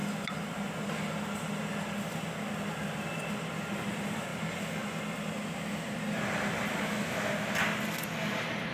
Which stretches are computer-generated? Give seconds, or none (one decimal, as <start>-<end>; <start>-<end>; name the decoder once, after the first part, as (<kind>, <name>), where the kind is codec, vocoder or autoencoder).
6.7-7.3 (autoencoder, DAC-VAE)